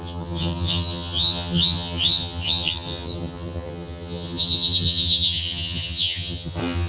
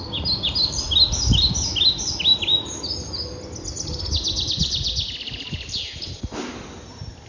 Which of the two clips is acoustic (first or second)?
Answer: second